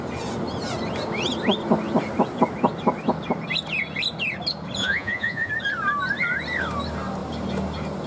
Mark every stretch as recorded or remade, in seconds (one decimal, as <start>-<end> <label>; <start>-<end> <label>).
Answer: 0.0-4.8 recorded; 4.8-5.5 remade; 5.5-8.1 recorded